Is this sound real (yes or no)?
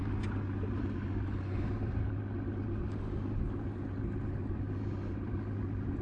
yes